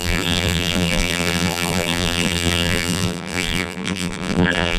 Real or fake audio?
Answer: fake